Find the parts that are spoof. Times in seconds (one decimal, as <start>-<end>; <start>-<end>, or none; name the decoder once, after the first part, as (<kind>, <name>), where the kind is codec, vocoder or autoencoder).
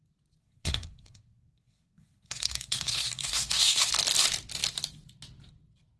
0.4-3.9 (codec, SNAC)